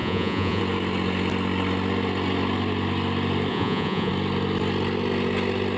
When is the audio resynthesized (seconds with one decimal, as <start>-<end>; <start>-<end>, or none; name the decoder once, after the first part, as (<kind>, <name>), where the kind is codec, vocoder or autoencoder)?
0.0-0.6 (vocoder, Vocos); 3.5-4.1

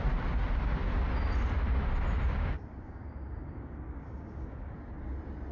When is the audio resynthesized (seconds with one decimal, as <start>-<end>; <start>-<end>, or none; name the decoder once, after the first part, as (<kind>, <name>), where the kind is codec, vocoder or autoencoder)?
2.3-4.7 (codec, DAC)

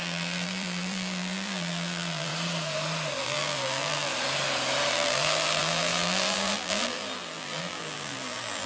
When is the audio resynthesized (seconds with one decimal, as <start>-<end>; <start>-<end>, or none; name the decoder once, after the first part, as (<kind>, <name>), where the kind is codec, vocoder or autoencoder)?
0.0-2.3 (vocoder, BigVGAN v2); 3.2-4.1; 4.9-8.7

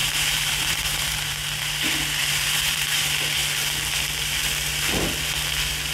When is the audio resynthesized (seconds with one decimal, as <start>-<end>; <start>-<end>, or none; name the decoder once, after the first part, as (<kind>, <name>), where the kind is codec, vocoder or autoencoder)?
0.0-1.3 (vocoder, BigVGAN v2); 2.2-3.0

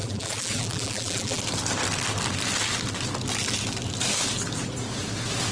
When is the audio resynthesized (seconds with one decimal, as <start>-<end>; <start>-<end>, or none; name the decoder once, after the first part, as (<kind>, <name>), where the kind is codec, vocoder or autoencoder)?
0.0-1.4 (vocoder, BigVGAN v2)

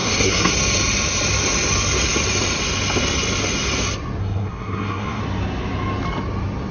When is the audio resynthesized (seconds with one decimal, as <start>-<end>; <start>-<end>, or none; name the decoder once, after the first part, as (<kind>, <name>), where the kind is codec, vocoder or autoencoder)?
0.0-0.5 (codec, SNAC); 4.2-5.2

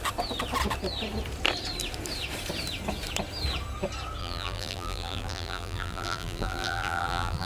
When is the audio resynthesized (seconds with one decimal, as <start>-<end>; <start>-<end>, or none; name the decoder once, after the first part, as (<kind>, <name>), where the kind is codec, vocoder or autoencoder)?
4.2-7.5 (vocoder, BigVGAN v2)